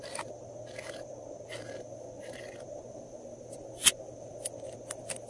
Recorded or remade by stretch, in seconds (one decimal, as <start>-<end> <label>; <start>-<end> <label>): 0.0-5.3 recorded